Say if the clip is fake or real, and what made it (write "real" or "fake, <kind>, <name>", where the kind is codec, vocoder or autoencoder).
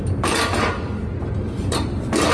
fake, vocoder, BigVGAN v2